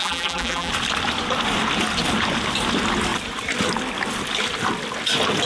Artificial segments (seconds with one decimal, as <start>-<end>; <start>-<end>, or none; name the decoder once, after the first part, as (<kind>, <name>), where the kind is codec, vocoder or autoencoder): 0.0-0.7 (vocoder, BigVGAN v2)